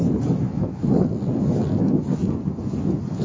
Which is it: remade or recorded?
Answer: recorded